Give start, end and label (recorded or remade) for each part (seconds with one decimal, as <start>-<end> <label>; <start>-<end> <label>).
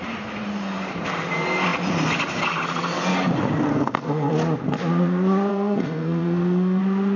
0.0-3.7 recorded; 3.7-4.3 remade; 4.3-5.5 recorded; 5.5-6.8 remade; 6.8-7.2 recorded